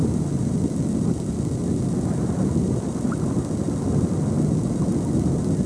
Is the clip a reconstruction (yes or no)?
no